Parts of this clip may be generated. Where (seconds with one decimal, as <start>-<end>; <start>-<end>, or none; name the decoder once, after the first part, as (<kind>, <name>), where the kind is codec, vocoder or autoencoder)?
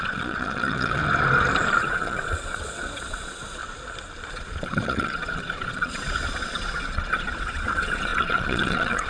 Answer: 0.0-1.0 (vocoder, Vocos); 1.8-3.6; 4.3-9.1